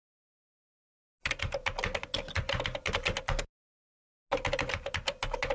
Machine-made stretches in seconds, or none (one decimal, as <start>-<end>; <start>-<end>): none